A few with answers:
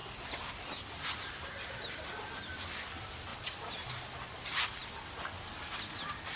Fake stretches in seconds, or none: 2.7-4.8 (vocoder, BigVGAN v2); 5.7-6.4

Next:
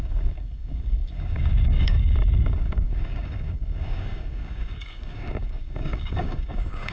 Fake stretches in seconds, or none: 0.0-6.9 (codec, DAC)

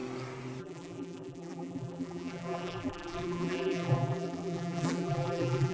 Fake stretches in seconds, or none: 0.6-5.7 (vocoder, BigVGAN v2)

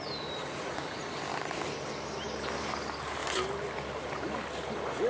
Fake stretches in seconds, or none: 0.4-1.2 (vocoder, Vocos)

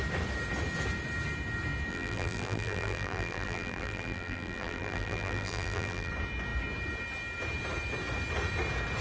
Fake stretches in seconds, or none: 1.9-6.1 (vocoder, BigVGAN v2)

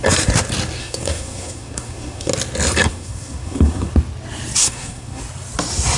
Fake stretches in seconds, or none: 0.8-2.3 (codec, SNAC); 2.9-3.9; 4.6-5.2

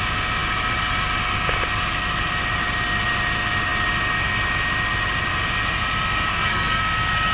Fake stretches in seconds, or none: 6.3-6.8 (codec, SNAC)

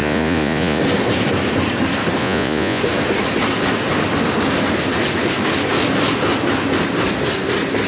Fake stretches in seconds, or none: 0.0-0.8 (vocoder, Vocos); 2.2-2.8